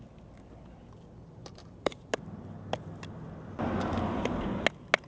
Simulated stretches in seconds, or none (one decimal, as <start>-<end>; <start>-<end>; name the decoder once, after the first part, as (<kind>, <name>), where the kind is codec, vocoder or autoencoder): 1.4-2.0 (vocoder, BigVGAN v2)